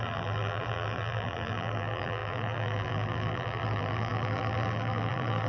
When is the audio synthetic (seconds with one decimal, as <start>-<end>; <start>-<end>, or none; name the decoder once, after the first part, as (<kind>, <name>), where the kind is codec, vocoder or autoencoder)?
0.0-5.5 (vocoder, BigVGAN v2)